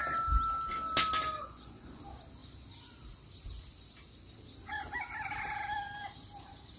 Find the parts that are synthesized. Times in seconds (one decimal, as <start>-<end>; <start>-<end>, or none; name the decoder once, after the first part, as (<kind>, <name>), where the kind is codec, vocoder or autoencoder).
1.4-2.0 (vocoder, Vocos)

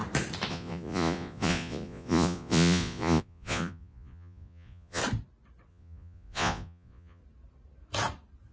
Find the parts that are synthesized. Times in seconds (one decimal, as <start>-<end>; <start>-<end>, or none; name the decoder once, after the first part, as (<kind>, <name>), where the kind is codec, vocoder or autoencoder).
0.5-5.0 (vocoder, Vocos); 5.7-7.2

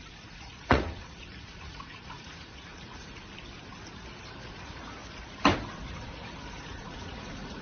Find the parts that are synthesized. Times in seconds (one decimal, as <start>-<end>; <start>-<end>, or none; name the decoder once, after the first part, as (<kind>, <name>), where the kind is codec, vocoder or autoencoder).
0.0-3.2 (vocoder, Vocos); 4.5-5.0; 6.0-7.6

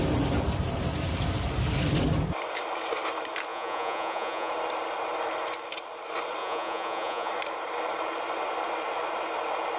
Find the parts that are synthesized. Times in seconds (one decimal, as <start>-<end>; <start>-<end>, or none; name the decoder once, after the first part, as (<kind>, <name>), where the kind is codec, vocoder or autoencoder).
3.5-4.5 (vocoder, Vocos); 6.4-7.3

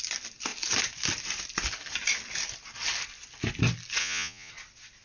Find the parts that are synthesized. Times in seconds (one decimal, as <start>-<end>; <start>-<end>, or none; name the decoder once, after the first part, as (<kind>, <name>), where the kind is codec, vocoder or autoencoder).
4.0-4.5 (vocoder, Vocos)

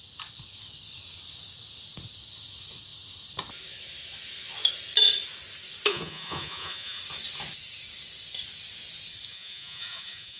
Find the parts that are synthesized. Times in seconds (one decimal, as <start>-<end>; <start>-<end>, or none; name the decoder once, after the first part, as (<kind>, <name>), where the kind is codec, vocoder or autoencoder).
5.9-7.0 (vocoder, Vocos); 9.3-10.4